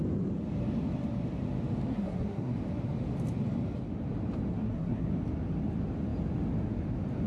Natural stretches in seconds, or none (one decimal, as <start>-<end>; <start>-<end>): 0.0-1.9; 2.5-4.5; 5.1-7.3